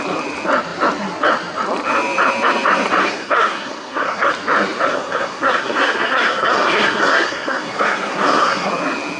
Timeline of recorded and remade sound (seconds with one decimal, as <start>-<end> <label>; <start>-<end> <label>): 0.0-3.0 recorded; 3.0-4.3 remade; 4.3-4.9 recorded; 4.9-8.7 remade; 8.7-9.2 recorded